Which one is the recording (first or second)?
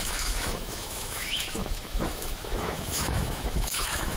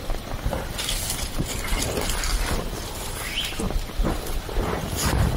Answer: second